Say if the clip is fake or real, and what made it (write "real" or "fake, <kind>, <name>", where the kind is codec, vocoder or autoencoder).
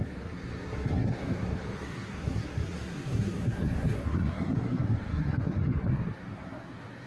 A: fake, codec, SNAC